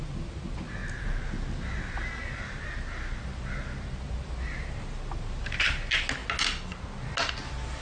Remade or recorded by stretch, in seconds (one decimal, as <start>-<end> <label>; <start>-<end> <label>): 0.0-7.8 recorded